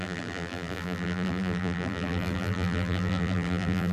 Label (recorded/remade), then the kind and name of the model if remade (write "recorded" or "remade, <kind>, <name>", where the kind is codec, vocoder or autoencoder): remade, vocoder, BigVGAN v2